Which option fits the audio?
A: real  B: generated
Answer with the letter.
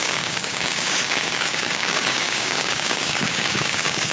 B